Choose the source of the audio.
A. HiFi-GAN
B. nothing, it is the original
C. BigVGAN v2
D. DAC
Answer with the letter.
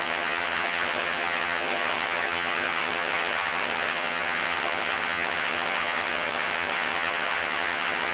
A